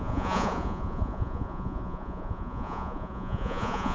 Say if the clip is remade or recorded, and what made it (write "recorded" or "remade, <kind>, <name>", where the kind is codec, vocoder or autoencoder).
remade, vocoder, Vocos